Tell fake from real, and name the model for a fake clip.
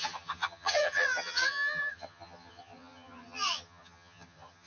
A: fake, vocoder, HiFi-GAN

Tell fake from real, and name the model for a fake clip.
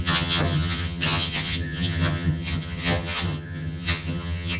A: fake, vocoder, HiFi-GAN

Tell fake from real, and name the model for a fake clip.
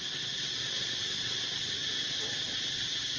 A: real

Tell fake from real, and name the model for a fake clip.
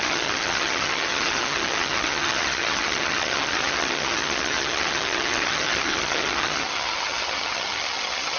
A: fake, vocoder, HiFi-GAN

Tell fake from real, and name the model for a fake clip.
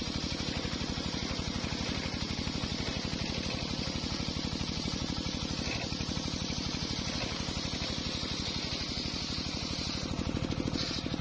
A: real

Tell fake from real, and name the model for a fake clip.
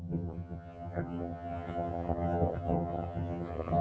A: fake, vocoder, HiFi-GAN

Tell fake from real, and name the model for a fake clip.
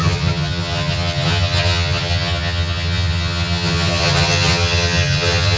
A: fake, vocoder, HiFi-GAN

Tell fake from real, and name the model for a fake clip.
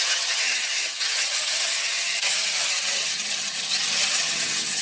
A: fake, vocoder, HiFi-GAN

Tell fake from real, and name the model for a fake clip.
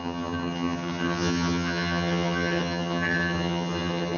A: fake, vocoder, HiFi-GAN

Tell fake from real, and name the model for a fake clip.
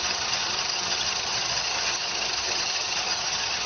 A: fake, vocoder, HiFi-GAN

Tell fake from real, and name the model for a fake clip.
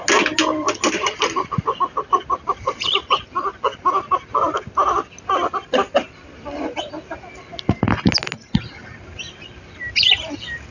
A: real